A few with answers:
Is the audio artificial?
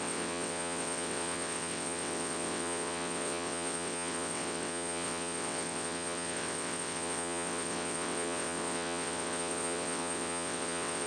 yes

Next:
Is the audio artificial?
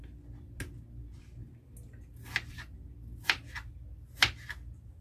no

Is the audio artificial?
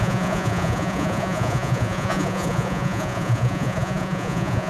yes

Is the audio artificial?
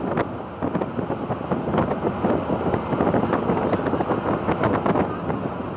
no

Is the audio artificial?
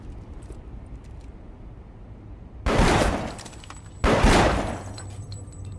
no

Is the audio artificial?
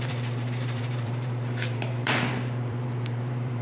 yes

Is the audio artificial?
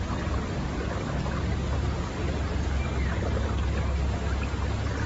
no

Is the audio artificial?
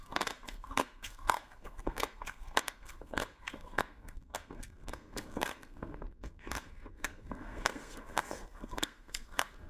yes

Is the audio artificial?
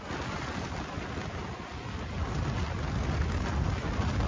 no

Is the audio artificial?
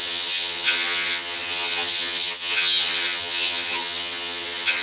yes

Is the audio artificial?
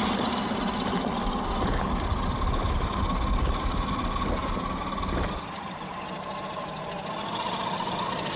no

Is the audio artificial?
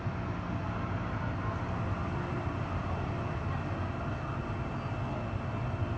no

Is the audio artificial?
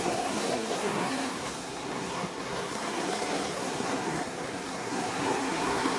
yes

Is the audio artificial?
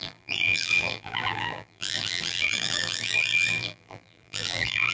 yes